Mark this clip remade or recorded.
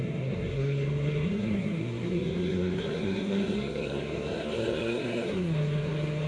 remade